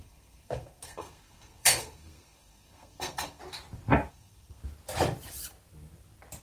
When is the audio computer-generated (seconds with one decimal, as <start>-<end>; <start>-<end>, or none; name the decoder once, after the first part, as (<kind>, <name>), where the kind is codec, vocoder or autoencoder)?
0.0-3.4 (codec, SNAC); 4.1-4.6